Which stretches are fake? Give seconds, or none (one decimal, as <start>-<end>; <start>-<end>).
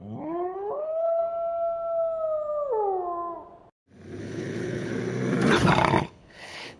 0.0-1.2; 4.2-4.9; 6.0-6.8